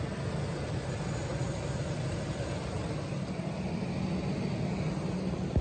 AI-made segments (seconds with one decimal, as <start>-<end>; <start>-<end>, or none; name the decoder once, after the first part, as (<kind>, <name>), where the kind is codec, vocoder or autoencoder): none

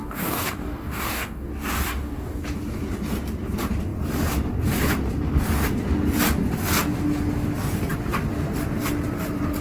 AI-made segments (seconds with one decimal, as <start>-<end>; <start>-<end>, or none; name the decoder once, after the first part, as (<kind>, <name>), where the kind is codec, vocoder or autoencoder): 0.0-2.4 (codec, DAC)

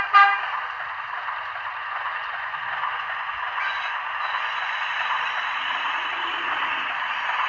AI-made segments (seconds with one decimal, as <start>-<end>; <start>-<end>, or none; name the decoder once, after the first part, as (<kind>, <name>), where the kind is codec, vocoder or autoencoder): 1.8-4.8 (vocoder, Vocos)

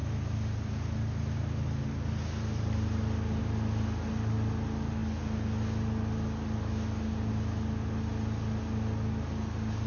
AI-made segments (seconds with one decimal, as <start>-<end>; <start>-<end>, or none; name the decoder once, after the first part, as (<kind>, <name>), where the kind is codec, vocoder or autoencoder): none